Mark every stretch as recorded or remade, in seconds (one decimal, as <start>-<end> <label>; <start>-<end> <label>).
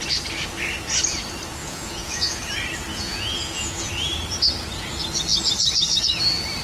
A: 0.0-1.6 recorded; 1.6-2.4 remade; 2.4-2.9 recorded; 2.9-3.9 remade; 3.9-6.6 recorded